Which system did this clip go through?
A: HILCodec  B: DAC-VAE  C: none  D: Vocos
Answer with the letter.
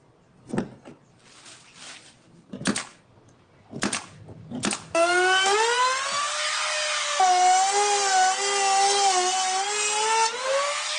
C